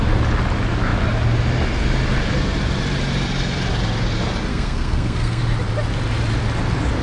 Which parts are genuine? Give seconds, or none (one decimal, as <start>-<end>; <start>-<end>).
0.0-4.5; 5.4-7.0